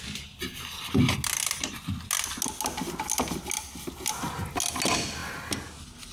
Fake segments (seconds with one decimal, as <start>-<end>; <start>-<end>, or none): none